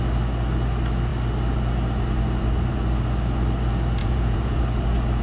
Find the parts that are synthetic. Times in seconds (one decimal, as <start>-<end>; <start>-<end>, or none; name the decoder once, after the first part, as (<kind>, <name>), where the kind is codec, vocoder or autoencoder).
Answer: 4.0-4.6 (vocoder, Vocos)